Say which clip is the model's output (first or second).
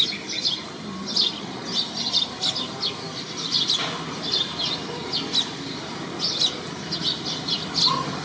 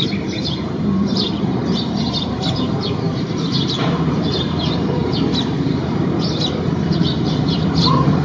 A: second